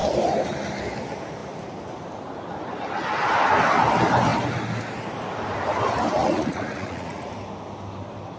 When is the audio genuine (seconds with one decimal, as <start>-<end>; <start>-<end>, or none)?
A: 0.0-6.2; 7.3-8.4